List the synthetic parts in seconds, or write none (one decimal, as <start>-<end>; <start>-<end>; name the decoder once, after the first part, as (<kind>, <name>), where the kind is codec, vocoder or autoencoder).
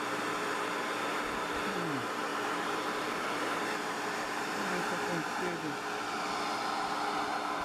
2.3-4.8 (vocoder, BigVGAN v2)